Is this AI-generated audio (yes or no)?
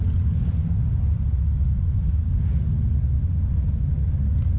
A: no